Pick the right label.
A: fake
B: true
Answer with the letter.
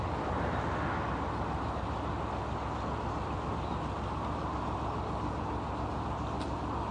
B